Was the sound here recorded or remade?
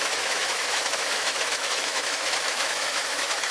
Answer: remade